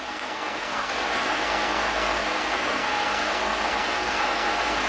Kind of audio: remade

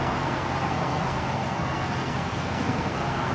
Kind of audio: remade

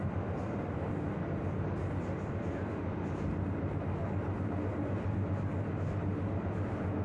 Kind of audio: recorded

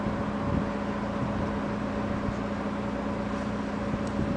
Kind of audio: recorded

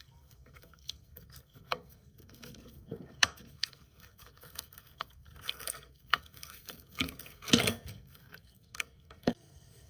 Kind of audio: remade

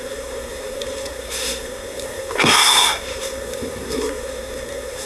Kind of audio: remade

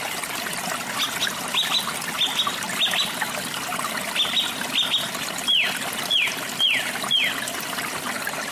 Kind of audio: recorded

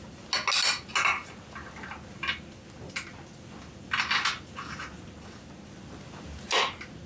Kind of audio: recorded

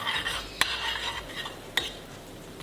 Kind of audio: recorded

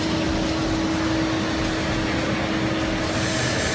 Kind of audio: recorded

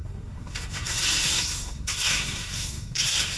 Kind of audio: remade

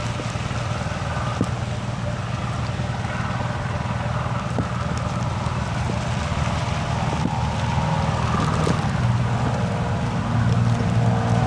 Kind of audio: recorded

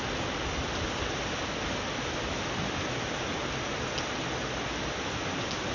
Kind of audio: recorded